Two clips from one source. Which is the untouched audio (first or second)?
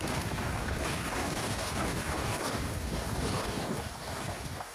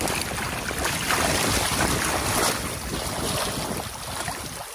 second